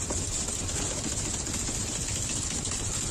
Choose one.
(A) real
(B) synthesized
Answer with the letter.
A